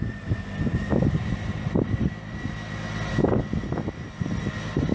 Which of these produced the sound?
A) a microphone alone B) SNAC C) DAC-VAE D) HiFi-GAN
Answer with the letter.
A